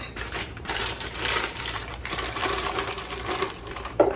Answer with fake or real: fake